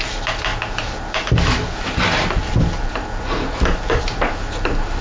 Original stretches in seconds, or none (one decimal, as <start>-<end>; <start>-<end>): 0.0-5.0